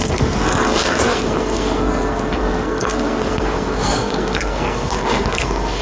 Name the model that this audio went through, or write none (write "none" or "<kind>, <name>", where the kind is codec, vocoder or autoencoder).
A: codec, SNAC